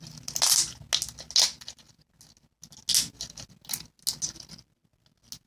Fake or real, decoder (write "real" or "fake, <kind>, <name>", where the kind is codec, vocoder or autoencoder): real